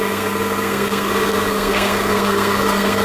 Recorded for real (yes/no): no